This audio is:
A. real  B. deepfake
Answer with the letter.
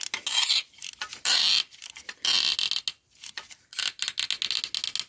A